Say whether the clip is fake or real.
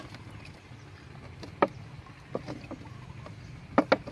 real